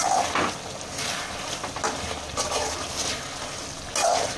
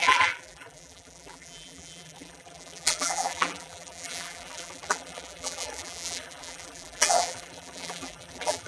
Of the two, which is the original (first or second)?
first